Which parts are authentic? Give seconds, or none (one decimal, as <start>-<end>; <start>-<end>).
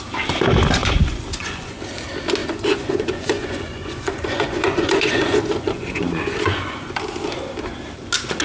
0.0-0.8; 1.8-2.4; 6.9-8.4